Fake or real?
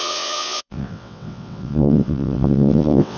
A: fake